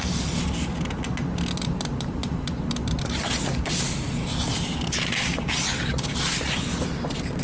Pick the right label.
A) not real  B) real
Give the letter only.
B